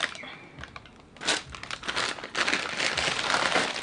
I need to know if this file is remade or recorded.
recorded